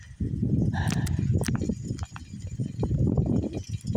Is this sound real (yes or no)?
no